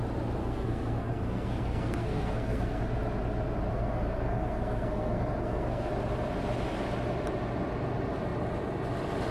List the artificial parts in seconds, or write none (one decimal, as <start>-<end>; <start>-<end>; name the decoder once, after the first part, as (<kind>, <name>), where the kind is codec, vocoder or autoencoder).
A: 0.4-2.8 (codec, SNAC); 3.7-5.9